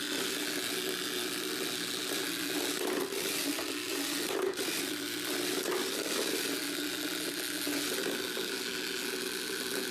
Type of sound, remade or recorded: recorded